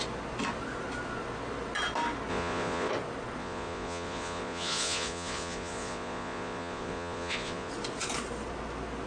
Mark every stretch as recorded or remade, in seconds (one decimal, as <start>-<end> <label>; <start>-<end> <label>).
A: 0.0-2.3 recorded; 2.3-2.9 remade; 2.9-3.4 recorded; 3.4-7.7 remade; 7.7-9.1 recorded